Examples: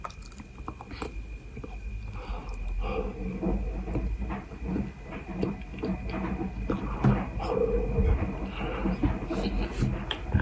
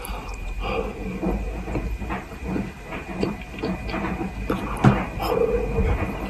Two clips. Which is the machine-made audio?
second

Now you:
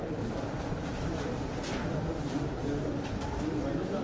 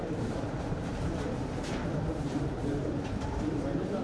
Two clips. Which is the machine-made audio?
second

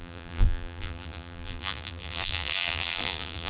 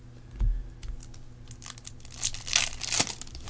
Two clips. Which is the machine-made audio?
first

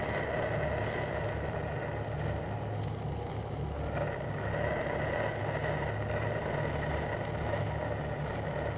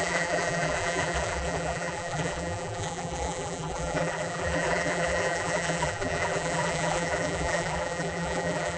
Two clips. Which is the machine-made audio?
second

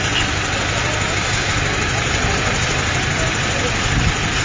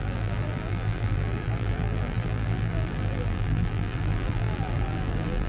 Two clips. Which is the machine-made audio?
second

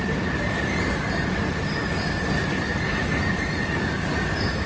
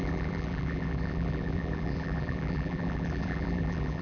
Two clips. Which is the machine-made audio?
second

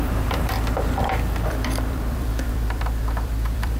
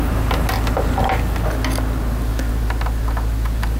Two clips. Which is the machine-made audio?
first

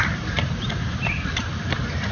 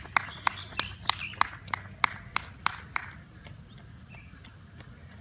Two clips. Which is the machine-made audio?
first